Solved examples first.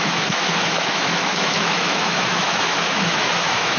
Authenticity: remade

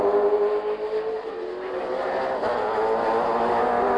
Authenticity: recorded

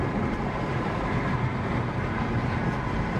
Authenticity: recorded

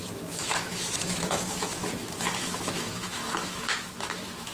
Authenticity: remade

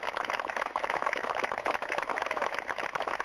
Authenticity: remade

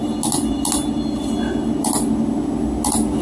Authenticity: recorded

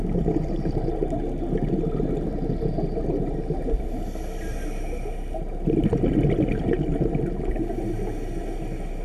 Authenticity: recorded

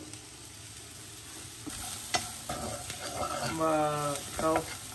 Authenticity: recorded